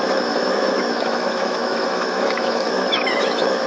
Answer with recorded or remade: remade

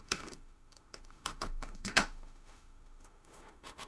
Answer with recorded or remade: remade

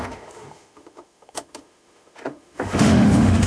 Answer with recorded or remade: remade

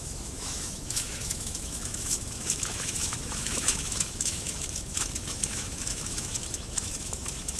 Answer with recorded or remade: remade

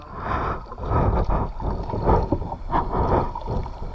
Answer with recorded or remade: recorded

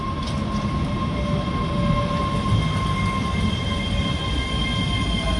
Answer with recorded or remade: recorded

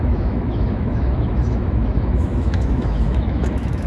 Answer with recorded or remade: remade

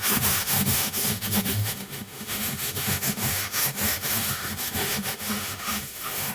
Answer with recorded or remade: remade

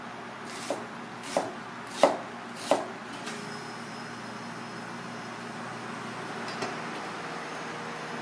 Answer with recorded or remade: recorded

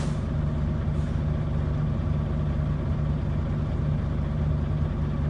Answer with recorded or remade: recorded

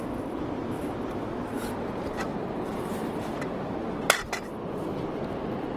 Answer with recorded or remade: recorded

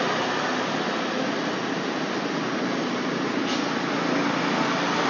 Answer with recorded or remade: recorded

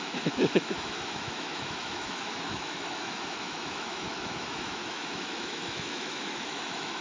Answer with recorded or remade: remade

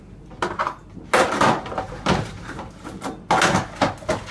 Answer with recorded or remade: recorded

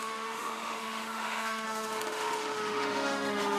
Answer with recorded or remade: remade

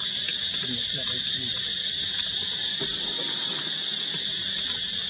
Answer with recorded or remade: recorded